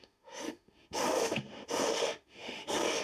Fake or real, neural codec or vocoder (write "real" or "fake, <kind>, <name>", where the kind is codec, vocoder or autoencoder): fake, autoencoder, DAC-VAE